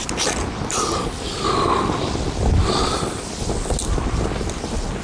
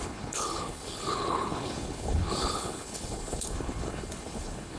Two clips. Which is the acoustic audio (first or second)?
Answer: first